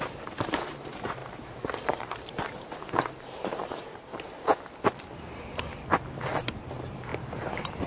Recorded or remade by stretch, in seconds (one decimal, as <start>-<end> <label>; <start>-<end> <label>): 0.0-4.5 remade; 4.5-6.4 recorded; 6.4-7.9 remade